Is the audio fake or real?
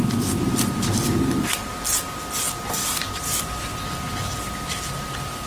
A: real